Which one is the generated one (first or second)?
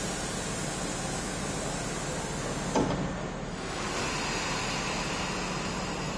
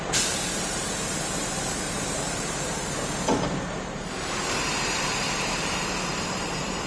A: second